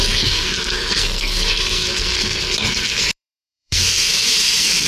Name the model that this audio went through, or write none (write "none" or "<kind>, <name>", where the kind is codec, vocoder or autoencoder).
codec, SNAC